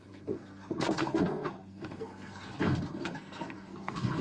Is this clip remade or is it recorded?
remade